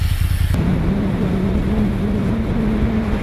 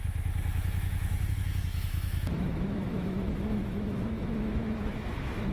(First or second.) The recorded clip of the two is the first